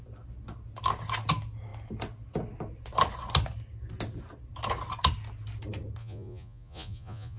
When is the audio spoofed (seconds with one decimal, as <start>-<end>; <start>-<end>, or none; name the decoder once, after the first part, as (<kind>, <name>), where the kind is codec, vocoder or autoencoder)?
6.0-7.4 (vocoder, Vocos)